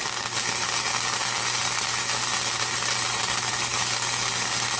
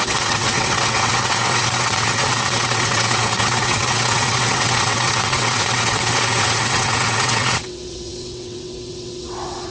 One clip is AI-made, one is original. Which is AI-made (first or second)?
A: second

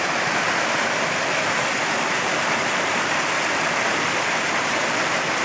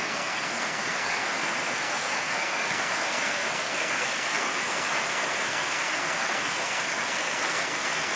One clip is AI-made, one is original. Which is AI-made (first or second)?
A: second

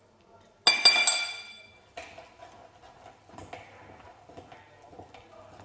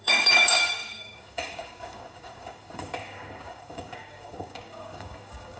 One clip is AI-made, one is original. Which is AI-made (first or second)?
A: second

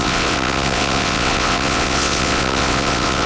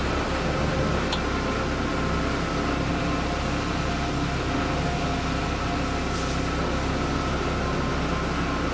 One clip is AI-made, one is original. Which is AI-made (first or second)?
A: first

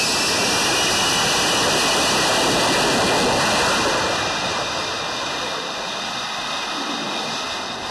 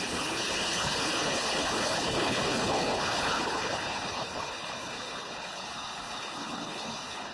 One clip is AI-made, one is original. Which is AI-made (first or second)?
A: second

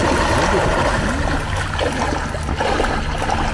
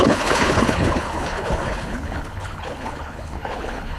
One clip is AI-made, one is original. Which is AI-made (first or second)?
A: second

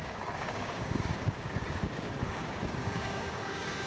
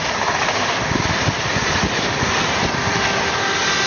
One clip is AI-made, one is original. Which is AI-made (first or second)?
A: first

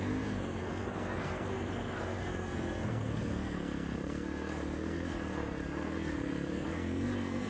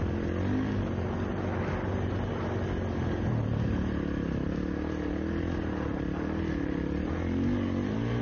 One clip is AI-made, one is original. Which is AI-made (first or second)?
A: first